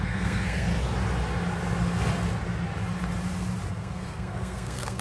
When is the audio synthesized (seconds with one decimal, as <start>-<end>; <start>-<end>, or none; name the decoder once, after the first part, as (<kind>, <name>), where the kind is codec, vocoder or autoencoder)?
0.0-0.7 (codec, SNAC); 3.7-5.0